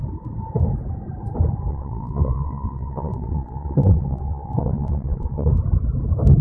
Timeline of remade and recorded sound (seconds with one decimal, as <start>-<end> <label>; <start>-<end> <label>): 0.0-1.7 recorded; 1.7-5.5 remade; 5.5-6.4 recorded